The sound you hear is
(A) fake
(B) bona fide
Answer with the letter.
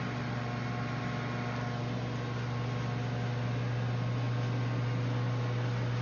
B